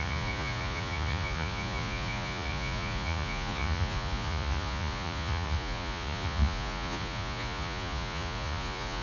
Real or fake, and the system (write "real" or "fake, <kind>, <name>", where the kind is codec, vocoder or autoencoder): fake, vocoder, Vocos